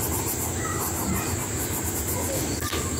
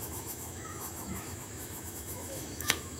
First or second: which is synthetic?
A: second